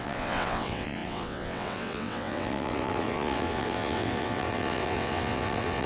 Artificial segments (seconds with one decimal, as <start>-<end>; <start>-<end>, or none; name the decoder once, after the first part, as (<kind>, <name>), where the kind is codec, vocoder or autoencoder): 0.0-5.9 (vocoder, WaveNeXt)